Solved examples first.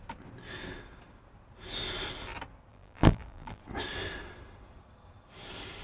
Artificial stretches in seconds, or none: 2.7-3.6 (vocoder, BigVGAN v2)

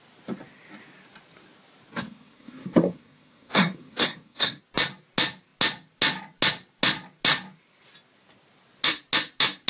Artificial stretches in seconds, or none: 1.9-4.6 (codec, SNAC)

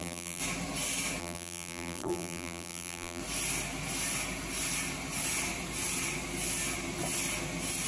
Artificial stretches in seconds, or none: 0.0-0.4 (vocoder, BigVGAN v2); 1.2-3.2

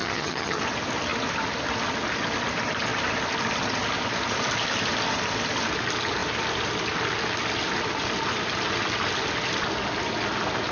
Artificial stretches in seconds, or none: 0.0-0.6 (vocoder, HiFi-GAN)

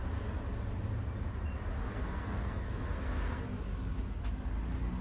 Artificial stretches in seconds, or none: 1.9-3.6 (codec, SNAC)

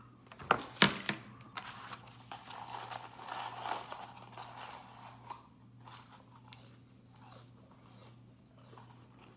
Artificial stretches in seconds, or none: none